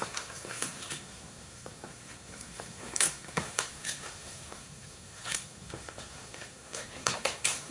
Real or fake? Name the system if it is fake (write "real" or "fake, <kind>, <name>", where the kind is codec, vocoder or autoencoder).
fake, codec, SNAC